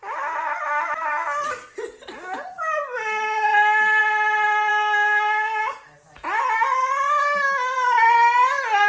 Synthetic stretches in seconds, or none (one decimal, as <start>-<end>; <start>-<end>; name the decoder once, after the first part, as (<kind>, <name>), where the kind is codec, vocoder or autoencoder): 4.7-5.7 (codec, DAC)

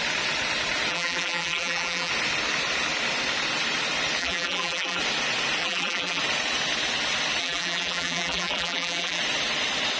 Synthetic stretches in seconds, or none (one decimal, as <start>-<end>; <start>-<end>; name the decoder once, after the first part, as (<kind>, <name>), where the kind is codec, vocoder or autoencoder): 0.9-2.1 (vocoder, BigVGAN v2); 4.2-5.0; 5.6-6.2; 7.4-9.2

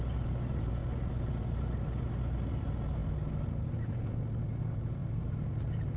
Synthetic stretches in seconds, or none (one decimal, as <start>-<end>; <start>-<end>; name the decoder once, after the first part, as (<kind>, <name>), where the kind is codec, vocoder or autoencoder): none

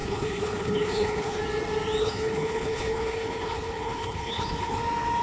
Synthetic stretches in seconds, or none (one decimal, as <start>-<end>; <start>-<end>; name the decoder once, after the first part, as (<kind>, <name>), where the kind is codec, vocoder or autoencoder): 0.0-1.4 (codec, HILCodec); 2.0-4.8

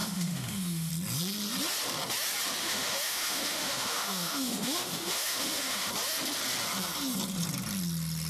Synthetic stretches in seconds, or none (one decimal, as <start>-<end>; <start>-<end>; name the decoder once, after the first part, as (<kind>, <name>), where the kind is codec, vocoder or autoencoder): 0.0-0.9 (autoencoder, DAC-VAE); 2.6-5.9

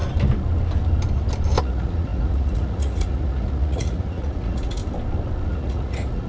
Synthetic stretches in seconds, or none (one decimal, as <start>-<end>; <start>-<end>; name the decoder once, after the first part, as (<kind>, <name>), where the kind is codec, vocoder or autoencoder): 1.6-4.8 (vocoder, Vocos); 5.5-6.3

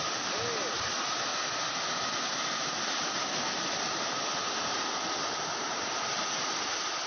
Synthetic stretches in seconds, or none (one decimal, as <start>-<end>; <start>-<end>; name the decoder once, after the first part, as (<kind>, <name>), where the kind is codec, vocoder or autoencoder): none